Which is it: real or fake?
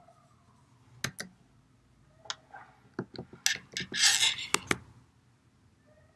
real